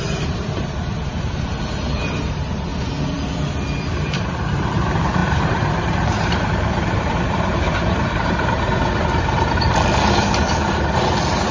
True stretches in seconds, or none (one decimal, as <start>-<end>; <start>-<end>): 2.7-3.8